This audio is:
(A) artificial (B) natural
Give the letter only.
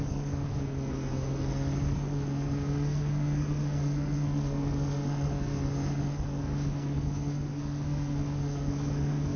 A